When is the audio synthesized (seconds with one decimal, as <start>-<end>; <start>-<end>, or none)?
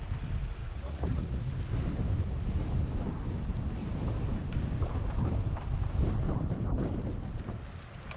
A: 0.6-1.4